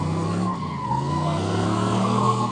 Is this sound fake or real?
fake